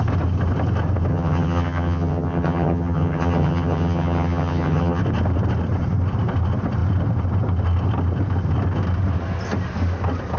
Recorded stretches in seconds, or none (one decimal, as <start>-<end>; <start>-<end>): 0.0-1.1; 5.0-10.4